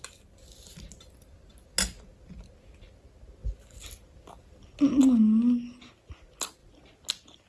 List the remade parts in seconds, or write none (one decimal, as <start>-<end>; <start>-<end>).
none